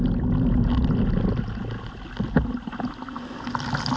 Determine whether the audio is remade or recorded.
recorded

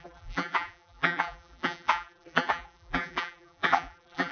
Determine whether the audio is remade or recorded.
remade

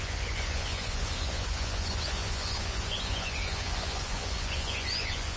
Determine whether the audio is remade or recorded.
remade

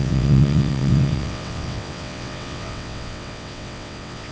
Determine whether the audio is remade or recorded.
remade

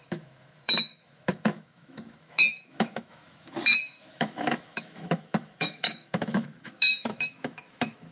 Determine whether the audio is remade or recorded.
remade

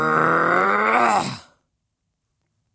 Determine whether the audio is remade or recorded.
remade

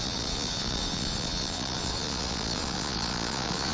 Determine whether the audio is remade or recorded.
remade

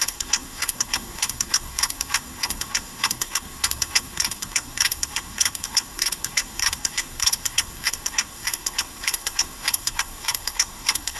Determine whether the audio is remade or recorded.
remade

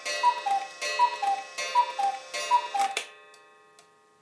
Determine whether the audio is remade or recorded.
recorded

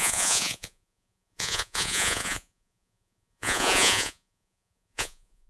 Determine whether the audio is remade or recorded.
remade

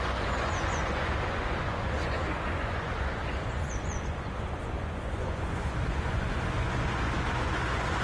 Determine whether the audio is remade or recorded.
remade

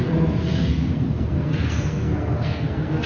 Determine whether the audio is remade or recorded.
remade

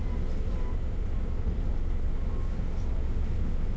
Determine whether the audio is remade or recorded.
recorded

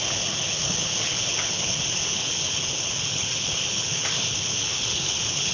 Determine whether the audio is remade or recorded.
remade